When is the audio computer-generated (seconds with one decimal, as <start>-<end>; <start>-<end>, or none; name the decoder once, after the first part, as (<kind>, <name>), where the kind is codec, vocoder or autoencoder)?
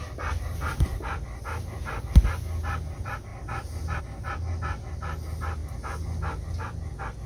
none